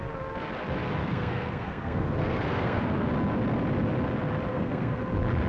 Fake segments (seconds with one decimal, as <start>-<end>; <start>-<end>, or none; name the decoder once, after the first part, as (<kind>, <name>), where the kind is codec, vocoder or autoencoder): 1.0-3.1 (codec, SNAC); 4.5-5.1